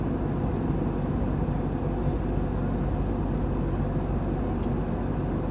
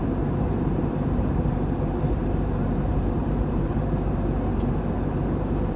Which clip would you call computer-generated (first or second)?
second